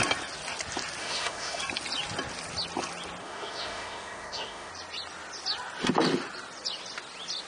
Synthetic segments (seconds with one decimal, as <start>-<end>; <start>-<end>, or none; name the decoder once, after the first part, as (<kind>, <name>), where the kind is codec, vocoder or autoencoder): 1.0-1.6 (autoencoder, DAC-VAE); 3.2-4.7

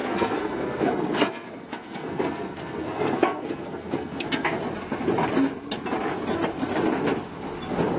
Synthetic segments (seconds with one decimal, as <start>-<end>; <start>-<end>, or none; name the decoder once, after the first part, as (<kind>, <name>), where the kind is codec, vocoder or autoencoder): 0.0-4.6 (codec, SNAC)

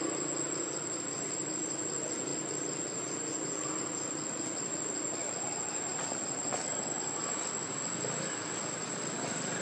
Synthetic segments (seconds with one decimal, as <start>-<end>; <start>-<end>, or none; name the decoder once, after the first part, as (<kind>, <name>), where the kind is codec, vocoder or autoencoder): none

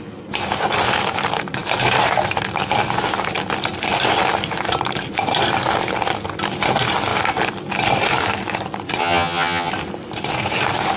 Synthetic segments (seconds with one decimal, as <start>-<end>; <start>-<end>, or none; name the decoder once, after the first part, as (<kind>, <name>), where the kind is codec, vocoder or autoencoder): 9.0-9.7 (vocoder, HiFi-GAN)

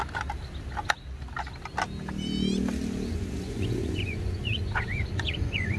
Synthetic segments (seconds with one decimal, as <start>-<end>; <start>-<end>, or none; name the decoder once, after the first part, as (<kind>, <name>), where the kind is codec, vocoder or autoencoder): 3.1-5.8 (vocoder, Vocos)

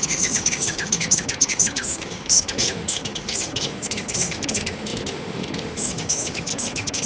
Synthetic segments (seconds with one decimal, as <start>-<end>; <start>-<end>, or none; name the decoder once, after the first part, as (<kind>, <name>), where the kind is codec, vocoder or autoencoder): 0.0-7.1 (autoencoder, DAC-VAE)

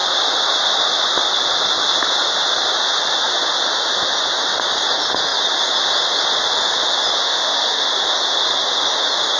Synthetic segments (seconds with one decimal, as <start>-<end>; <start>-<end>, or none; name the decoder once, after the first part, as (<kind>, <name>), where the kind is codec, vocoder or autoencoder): 7.2-7.9 (autoencoder, DAC-VAE)

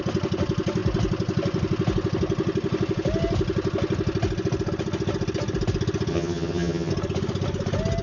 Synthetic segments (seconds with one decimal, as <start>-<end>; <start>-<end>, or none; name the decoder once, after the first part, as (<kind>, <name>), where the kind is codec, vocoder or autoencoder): 6.1-6.9 (vocoder, HiFi-GAN)